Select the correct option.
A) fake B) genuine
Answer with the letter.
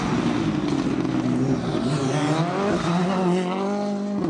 B